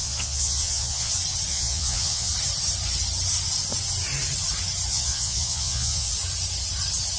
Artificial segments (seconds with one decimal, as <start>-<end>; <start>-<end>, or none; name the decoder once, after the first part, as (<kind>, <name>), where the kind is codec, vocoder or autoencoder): 0.0-1.1 (vocoder, Vocos); 1.5-2.3; 4.9-6.1